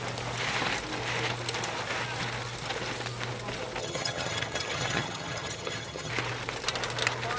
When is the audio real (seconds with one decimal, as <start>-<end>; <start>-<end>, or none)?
0.0-3.8; 6.1-7.4